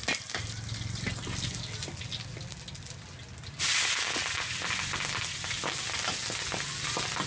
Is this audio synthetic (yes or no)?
no